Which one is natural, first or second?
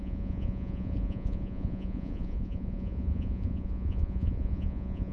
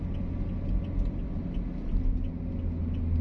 second